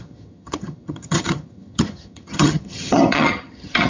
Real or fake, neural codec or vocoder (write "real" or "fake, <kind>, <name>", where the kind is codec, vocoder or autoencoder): fake, vocoder, HiFi-GAN